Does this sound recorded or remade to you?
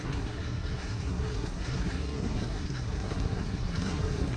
remade